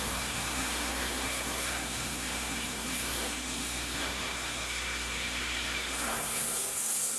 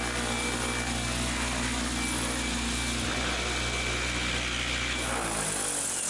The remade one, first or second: first